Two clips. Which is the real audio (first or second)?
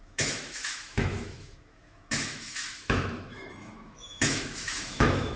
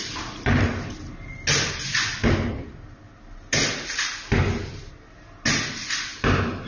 second